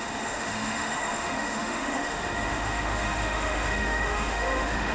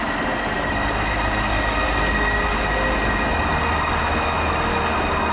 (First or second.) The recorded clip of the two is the second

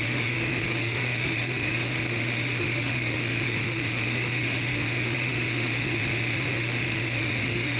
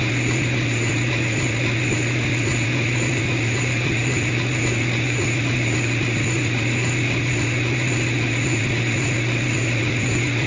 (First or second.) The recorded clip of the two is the second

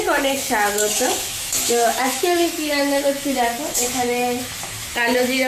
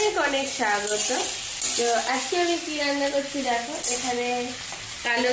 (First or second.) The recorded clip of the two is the second